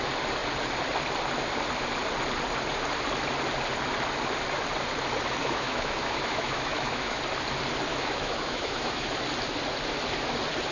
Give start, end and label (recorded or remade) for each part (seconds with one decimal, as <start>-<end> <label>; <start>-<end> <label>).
0.0-5.4 recorded; 5.4-7.2 remade; 7.2-7.9 recorded; 7.9-9.2 remade; 9.2-10.7 recorded